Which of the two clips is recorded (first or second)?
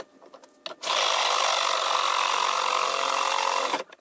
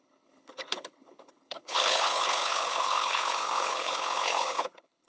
first